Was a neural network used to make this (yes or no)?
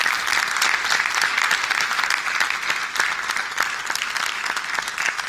no